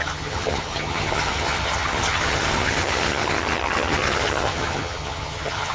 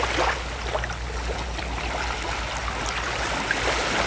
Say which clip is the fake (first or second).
first